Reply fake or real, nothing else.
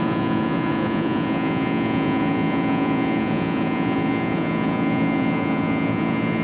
fake